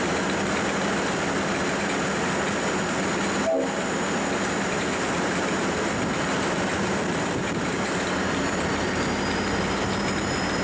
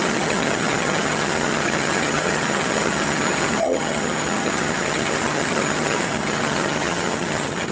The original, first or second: first